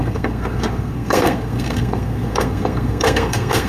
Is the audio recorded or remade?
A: remade